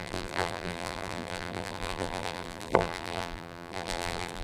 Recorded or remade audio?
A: remade